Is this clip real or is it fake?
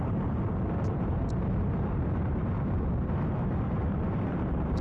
fake